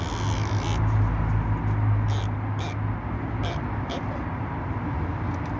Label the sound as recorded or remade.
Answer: recorded